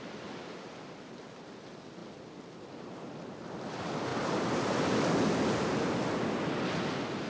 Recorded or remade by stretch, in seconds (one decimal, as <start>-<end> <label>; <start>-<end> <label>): 0.0-4.1 recorded; 4.1-4.7 remade; 4.7-7.3 recorded